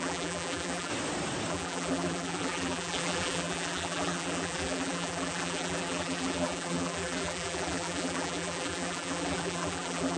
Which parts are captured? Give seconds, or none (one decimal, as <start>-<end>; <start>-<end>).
0.9-1.5